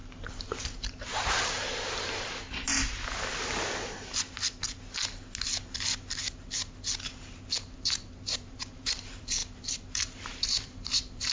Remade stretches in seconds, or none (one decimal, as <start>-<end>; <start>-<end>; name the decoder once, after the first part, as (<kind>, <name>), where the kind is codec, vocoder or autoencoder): 0.8-2.7 (vocoder, BigVGAN v2); 7.8-11.3